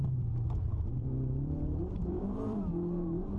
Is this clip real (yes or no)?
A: no